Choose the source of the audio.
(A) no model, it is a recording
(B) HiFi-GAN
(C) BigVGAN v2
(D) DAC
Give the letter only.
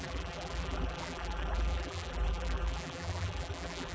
C